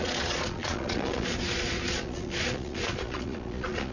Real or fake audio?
fake